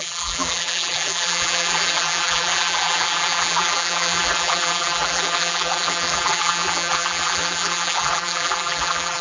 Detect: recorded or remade remade